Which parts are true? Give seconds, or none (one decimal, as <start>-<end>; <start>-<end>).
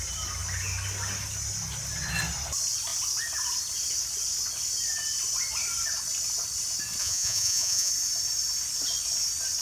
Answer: 0.0-7.0; 7.9-9.6